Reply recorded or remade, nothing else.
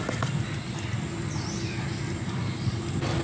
recorded